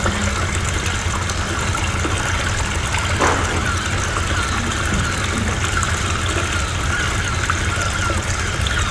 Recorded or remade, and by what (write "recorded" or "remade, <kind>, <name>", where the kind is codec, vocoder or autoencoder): recorded